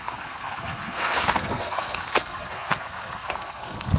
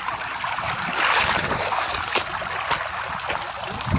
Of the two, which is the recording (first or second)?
second